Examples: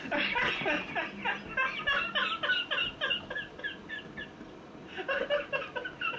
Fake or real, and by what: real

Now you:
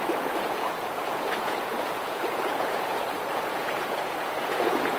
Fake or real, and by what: fake, vocoder, Vocos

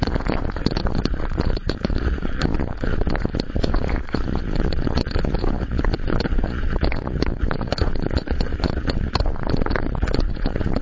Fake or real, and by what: fake, vocoder, Vocos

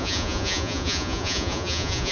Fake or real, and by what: fake, vocoder, Vocos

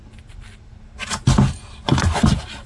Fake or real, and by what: real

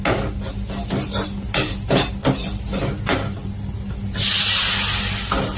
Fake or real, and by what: real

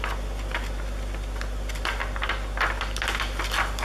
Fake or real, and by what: real